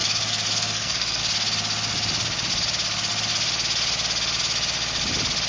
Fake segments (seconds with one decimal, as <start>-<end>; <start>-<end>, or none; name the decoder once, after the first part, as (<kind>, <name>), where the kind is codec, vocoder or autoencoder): 0.0-1.2 (codec, SNAC)